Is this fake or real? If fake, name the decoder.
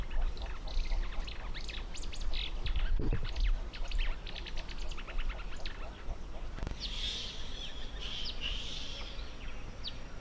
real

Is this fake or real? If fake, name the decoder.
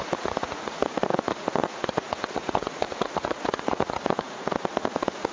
fake, vocoder, Vocos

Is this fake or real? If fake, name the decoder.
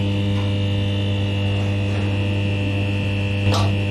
real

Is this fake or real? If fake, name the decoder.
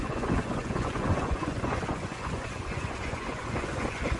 fake, vocoder, Vocos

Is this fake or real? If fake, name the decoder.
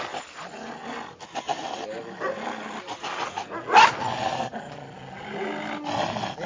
real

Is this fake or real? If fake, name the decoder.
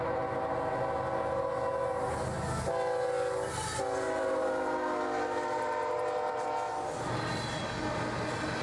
real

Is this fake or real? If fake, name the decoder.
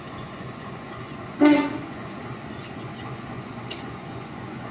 fake, vocoder, Vocos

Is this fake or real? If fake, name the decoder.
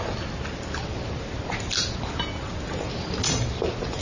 real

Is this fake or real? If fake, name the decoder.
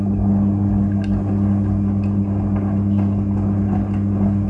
real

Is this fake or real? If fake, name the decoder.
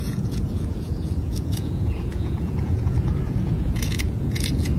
fake, vocoder, Vocos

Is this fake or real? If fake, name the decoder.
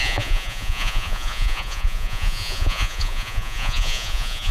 fake, vocoder, Vocos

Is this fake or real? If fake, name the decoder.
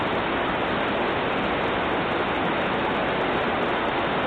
real